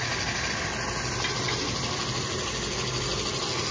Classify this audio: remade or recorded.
recorded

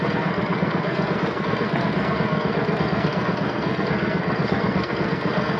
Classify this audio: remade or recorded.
remade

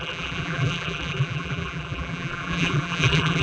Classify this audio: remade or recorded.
remade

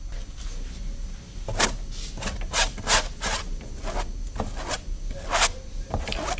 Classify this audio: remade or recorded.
recorded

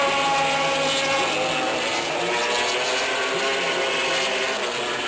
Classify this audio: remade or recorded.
recorded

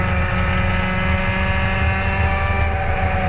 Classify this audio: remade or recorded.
recorded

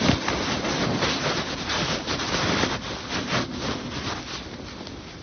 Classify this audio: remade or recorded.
recorded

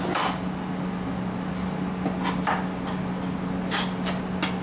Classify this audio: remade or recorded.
recorded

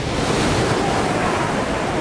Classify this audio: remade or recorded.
remade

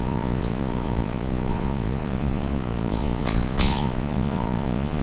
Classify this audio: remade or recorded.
remade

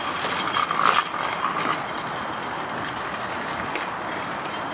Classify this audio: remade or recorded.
recorded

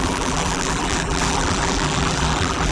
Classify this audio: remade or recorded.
remade